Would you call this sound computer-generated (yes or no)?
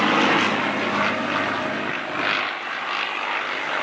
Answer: no